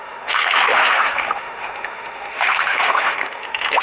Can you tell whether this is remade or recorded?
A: remade